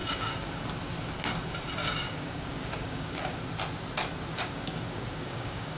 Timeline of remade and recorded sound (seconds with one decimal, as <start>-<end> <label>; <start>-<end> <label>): 0.0-0.6 remade; 0.6-1.8 recorded; 1.8-3.4 remade; 3.4-4.3 recorded; 4.3-5.8 remade